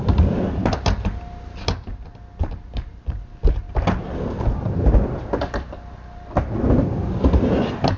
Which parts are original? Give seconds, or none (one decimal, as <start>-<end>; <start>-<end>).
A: 0.0-8.0